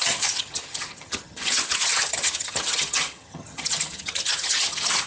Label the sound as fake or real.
fake